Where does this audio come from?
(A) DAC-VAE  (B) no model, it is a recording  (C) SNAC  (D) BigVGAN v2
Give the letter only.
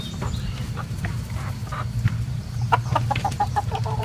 D